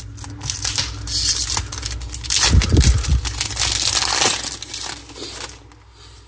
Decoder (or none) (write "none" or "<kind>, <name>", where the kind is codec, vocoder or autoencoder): none